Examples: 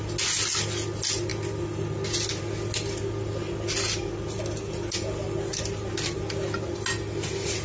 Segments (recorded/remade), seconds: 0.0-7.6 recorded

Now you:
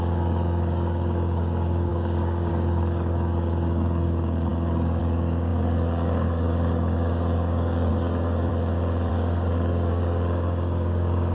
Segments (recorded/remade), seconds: 0.0-8.5 remade; 8.5-9.1 recorded; 9.1-11.3 remade

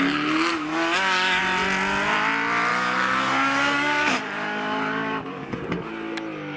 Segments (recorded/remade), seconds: 0.0-0.5 recorded; 0.5-1.4 remade; 1.4-2.7 recorded; 2.7-5.9 remade; 5.9-6.6 recorded

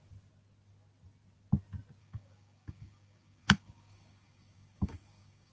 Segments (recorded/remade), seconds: 0.0-2.0 recorded; 2.0-5.5 remade